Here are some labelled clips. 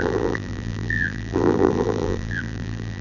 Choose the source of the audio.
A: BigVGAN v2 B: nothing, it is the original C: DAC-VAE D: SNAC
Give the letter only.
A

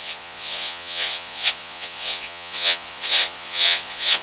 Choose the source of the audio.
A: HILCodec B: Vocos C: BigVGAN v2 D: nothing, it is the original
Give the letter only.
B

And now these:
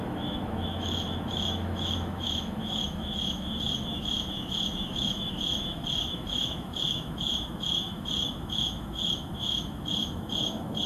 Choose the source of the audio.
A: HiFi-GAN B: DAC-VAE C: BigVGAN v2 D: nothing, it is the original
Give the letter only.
B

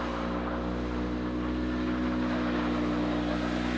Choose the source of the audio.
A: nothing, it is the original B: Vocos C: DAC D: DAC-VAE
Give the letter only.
A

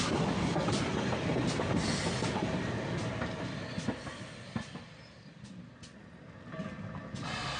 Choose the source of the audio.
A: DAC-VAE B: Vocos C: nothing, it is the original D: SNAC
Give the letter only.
C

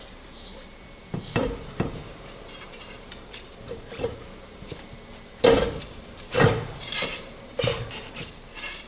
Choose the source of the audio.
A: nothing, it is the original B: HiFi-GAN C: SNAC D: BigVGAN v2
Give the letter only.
D